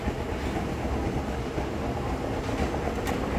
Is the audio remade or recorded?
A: recorded